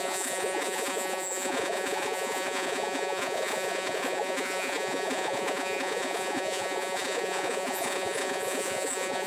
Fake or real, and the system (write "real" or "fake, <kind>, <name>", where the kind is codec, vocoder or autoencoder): fake, vocoder, Vocos